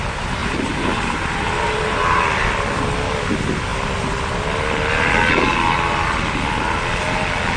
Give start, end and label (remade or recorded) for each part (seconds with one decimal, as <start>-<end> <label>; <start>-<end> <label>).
0.0-0.4 recorded; 0.4-2.2 remade; 2.2-7.6 recorded